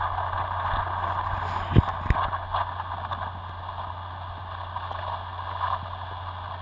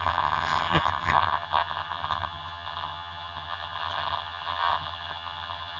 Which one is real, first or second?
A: first